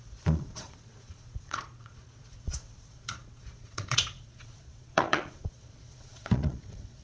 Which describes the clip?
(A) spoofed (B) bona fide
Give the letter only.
A